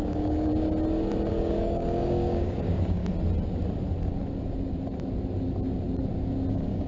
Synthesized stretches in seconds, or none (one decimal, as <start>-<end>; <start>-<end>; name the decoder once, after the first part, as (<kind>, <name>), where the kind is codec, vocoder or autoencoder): 0.0-0.5 (codec, DAC); 1.3-3.0; 6.5-6.9

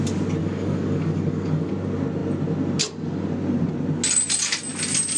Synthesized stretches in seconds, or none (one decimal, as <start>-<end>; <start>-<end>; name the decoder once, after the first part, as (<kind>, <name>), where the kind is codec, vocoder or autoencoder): 0.4-1.7 (codec, DAC)

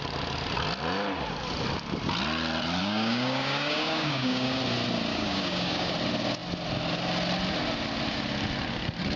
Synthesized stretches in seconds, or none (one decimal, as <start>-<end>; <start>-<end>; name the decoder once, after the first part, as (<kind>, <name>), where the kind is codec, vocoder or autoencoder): 2.8-4.6 (codec, DAC); 5.1-5.9

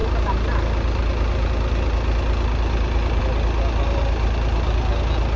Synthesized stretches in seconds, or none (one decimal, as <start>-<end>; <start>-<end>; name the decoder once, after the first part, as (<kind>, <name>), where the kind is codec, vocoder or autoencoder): none

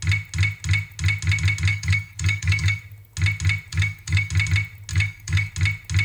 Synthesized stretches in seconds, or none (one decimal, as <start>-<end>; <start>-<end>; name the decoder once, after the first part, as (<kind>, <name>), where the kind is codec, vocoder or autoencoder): 1.7-2.8 (codec, DAC); 3.7-4.3; 4.9-5.5

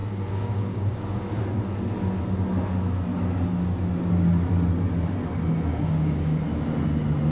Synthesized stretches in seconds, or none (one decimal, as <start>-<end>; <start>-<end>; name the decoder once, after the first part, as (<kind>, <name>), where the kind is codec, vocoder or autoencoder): 0.0-1.4 (codec, DAC); 5.7-6.4

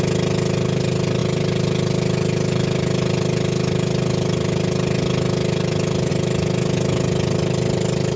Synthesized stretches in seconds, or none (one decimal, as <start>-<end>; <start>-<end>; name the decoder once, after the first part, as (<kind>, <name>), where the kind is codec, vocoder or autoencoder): none

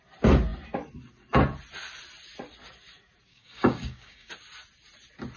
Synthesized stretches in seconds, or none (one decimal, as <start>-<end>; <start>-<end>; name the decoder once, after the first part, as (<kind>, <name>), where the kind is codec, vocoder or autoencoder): 3.3-4.3 (codec, DAC)